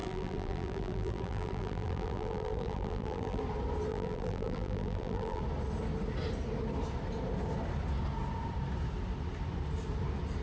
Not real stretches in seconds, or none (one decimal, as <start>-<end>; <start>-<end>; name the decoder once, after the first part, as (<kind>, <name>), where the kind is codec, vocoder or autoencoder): 0.0-3.4 (vocoder, BigVGAN v2); 3.9-5.4